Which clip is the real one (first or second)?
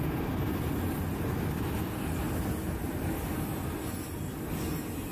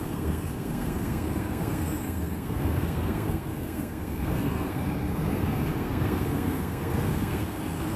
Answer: first